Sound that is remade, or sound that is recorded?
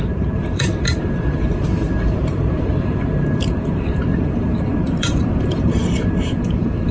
remade